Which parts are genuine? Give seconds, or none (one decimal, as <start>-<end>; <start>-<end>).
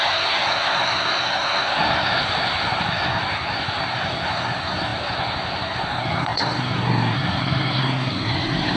none